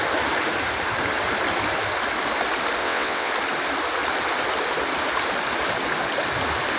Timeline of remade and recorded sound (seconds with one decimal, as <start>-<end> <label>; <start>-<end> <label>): 0.0-2.8 recorded; 2.8-3.3 remade; 3.3-6.8 recorded